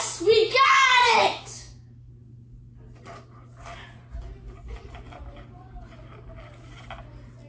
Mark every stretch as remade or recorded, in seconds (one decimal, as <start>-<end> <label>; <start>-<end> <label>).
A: 0.0-1.2 recorded; 1.2-2.1 remade; 2.1-7.5 recorded